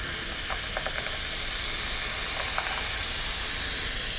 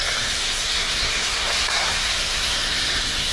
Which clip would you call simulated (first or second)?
second